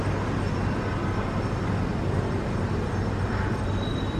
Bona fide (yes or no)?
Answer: yes